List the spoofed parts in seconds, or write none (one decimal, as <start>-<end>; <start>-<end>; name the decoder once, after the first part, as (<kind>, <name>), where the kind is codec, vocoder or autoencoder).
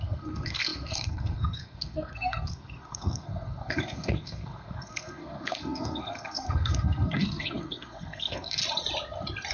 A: 0.0-8.6 (codec, SNAC)